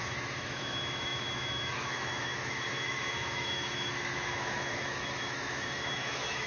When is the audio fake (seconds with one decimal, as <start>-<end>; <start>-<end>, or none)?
0.0-6.5